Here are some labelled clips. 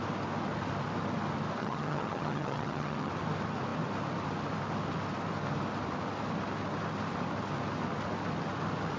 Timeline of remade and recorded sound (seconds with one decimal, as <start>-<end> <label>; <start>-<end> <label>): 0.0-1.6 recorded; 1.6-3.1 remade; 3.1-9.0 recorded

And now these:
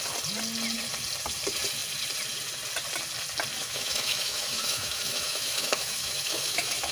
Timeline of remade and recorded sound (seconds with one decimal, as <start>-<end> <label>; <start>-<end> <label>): 0.0-3.6 recorded; 3.6-6.9 remade

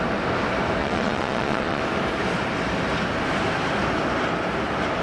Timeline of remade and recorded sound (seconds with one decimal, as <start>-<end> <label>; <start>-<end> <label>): 0.0-0.8 recorded; 0.8-1.8 remade; 1.8-5.0 recorded